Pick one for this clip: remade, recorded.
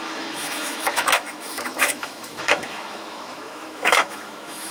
remade